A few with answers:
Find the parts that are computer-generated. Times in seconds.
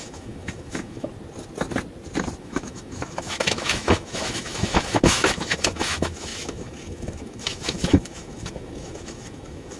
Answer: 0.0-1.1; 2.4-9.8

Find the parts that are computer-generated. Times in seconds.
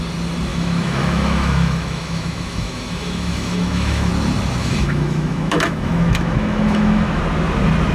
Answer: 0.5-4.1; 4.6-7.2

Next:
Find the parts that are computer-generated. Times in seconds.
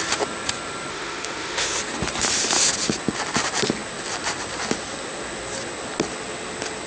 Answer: 0.9-1.8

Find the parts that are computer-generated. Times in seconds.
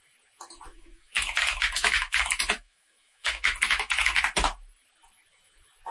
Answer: 0.7-4.2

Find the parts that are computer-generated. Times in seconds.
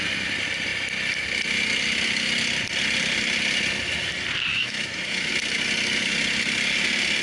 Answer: 4.5-5.3